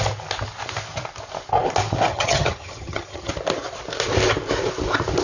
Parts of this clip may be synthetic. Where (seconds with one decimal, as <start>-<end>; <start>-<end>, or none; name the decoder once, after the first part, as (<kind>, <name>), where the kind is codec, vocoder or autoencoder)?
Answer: 2.1-3.3 (vocoder, HiFi-GAN)